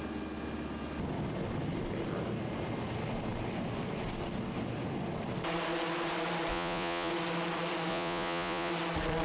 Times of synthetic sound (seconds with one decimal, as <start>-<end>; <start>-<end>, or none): 6.5-7.1; 7.9-8.7